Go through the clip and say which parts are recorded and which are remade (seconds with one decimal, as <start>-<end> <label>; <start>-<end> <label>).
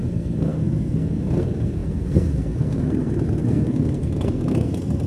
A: 0.0-5.1 remade